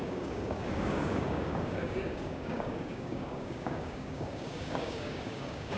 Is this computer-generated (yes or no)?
yes